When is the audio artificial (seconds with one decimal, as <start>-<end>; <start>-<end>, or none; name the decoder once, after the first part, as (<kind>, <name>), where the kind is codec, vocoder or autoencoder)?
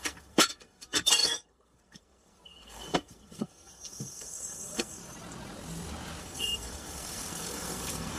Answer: 0.0-5.0 (codec, SNAC); 6.2-8.2